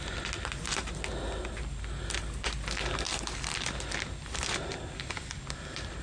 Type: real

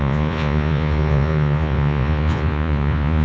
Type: fake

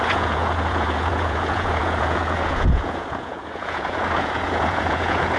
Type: fake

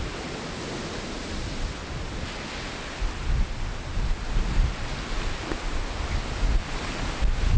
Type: real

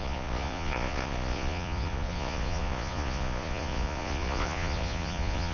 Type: fake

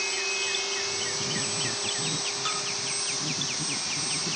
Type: real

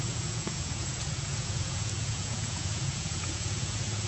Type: fake